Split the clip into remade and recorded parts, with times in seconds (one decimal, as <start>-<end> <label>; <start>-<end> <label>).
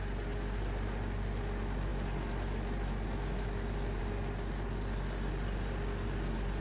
0.0-6.6 recorded